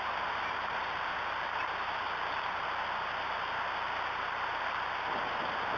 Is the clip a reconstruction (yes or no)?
no